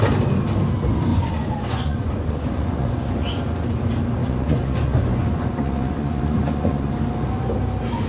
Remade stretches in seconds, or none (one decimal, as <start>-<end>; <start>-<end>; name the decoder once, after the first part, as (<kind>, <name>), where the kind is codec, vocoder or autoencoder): 1.1-3.8 (vocoder, Vocos); 4.2-6.9